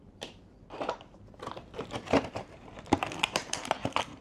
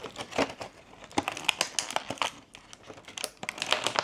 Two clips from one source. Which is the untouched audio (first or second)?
second